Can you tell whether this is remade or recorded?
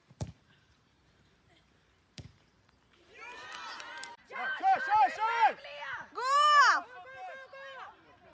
remade